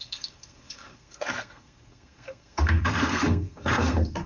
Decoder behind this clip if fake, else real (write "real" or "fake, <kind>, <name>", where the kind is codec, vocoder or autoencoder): fake, codec, SNAC